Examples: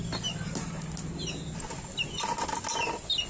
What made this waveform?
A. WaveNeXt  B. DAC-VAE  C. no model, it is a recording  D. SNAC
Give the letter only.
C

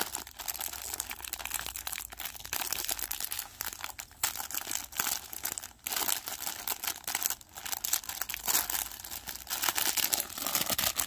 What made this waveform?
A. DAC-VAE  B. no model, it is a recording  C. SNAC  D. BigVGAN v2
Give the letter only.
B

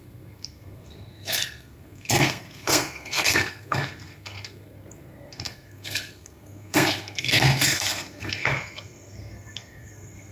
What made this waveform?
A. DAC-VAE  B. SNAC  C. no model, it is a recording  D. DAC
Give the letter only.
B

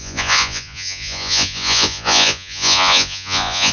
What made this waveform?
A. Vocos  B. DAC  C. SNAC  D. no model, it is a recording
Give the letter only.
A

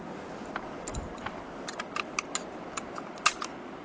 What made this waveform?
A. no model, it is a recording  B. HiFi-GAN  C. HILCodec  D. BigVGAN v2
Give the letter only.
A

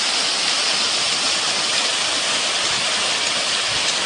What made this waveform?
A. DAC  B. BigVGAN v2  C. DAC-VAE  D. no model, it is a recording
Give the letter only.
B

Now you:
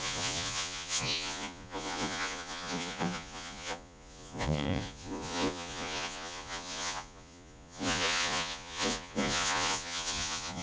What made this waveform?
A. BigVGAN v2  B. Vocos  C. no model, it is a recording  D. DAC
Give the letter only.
B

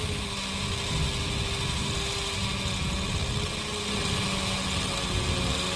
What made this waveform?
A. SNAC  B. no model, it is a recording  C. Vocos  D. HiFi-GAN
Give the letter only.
B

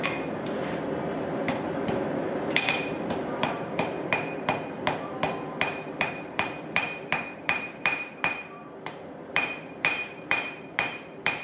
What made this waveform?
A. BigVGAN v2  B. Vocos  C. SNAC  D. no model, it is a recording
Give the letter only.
A